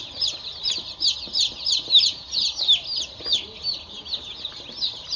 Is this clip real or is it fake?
real